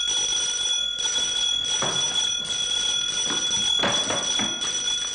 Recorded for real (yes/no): yes